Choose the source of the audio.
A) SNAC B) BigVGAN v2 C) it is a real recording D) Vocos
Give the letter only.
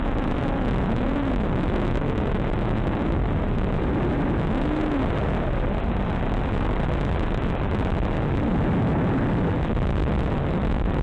C